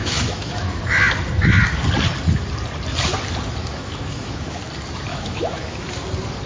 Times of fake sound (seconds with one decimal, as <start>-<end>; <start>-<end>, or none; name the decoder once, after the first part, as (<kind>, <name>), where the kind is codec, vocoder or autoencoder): 0.0-0.8 (autoencoder, DAC-VAE); 3.6-4.6; 5.1-5.9